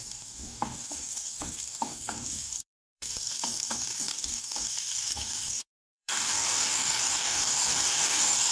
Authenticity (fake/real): fake